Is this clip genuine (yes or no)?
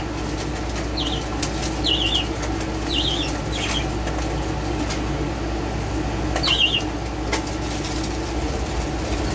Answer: yes